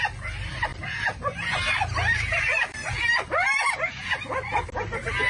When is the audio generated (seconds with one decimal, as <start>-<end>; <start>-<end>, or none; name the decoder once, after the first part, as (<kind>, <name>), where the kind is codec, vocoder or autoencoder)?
0.7-3.9 (vocoder, BigVGAN v2)